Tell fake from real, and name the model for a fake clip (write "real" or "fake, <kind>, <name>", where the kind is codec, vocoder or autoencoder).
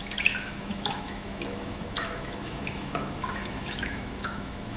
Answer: fake, autoencoder, DAC-VAE